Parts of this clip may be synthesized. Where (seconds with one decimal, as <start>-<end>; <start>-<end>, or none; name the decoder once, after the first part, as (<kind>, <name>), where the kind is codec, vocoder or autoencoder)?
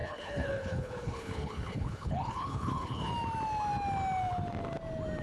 0.0-3.1 (codec, HILCodec)